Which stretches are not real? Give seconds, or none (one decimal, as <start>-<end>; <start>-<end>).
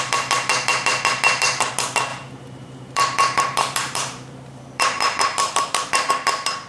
2.1-6.1